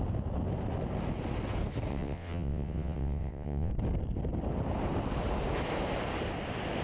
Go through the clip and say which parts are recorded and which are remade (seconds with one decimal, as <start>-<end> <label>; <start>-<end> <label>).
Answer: 0.0-1.9 recorded; 1.9-3.7 remade; 3.7-6.8 recorded